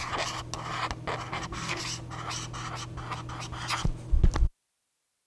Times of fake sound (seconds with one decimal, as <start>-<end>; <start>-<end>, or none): 1.3-1.8